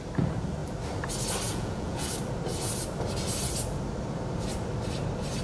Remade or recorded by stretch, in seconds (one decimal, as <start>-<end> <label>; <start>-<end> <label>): 0.0-1.5 recorded; 1.5-2.1 remade; 2.1-5.4 recorded